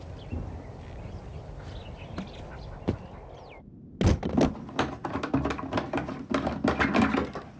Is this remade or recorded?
recorded